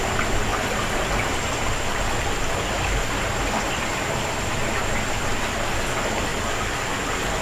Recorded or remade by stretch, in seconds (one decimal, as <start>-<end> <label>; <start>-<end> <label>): 0.0-0.5 recorded; 0.5-1.1 remade; 1.1-7.4 recorded